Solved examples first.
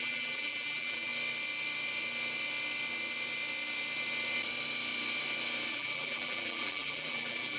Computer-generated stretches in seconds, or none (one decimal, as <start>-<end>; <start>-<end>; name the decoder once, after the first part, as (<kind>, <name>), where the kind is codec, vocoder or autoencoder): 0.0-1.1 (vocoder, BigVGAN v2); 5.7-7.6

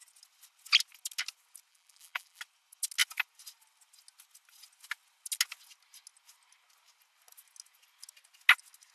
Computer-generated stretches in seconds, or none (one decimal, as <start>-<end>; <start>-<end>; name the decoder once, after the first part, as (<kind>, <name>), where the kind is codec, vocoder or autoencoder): 1.7-2.4 (vocoder, BigVGAN v2)

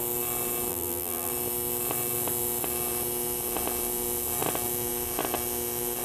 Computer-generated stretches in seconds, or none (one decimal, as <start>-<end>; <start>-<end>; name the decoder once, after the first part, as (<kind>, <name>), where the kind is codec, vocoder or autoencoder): 0.7-1.3 (vocoder, BigVGAN v2)

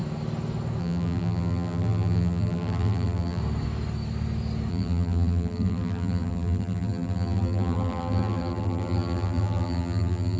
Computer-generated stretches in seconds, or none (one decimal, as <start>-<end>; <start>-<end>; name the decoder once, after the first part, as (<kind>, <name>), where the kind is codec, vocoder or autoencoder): 0.8-3.4 (vocoder, BigVGAN v2); 4.7-10.4

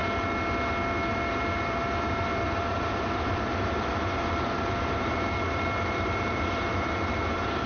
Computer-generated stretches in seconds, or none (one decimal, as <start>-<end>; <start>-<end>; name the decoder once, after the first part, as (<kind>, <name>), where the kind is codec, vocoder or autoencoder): 1.1-7.7 (vocoder, BigVGAN v2)

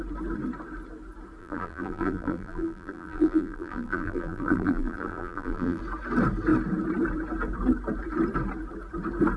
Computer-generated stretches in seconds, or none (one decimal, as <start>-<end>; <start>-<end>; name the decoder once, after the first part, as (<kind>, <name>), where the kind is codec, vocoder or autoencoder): 1.4-5.8 (vocoder, BigVGAN v2)

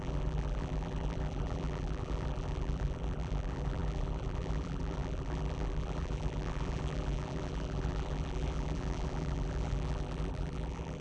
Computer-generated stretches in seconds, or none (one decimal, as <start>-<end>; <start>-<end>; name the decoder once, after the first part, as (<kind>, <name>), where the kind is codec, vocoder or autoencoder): 0.0-11.0 (vocoder, BigVGAN v2)

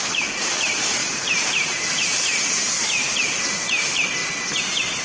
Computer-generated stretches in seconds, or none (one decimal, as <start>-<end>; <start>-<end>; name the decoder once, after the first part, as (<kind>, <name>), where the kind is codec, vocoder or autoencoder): 0.0-4.2 (vocoder, BigVGAN v2)